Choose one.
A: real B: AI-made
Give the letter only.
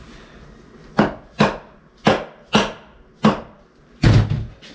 A